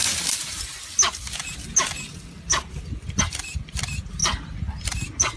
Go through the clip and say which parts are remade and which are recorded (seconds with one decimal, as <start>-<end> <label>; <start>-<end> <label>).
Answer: 0.0-5.4 recorded